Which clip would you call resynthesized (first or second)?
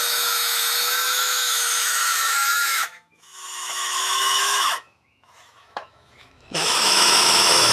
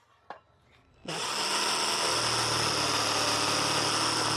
first